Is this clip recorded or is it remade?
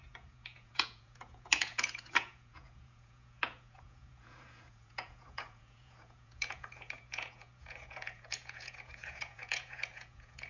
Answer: remade